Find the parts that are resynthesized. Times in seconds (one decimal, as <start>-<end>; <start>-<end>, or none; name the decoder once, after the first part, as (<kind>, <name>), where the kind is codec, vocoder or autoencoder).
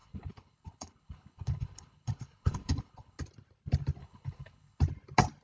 0.0-3.2 (codec, HILCodec); 4.0-4.8